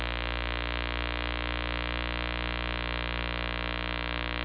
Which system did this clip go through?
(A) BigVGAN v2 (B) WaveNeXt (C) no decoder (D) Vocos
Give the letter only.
C